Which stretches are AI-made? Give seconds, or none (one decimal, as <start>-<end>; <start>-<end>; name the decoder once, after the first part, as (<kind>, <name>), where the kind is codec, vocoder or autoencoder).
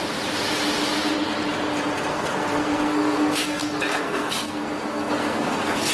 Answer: 2.1-5.9 (codec, SNAC)